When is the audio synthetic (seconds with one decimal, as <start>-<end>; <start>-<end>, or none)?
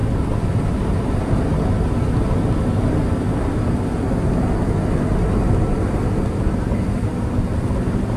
none